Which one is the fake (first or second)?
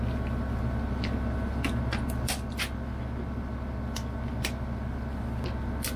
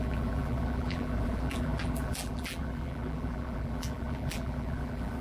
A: second